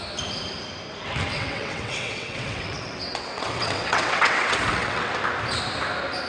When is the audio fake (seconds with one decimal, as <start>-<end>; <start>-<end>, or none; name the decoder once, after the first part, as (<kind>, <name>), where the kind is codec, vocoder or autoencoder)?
1.3-5.1 (vocoder, WaveNeXt)